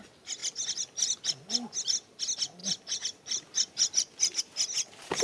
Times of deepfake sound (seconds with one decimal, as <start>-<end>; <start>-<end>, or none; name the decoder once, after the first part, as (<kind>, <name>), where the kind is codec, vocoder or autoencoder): none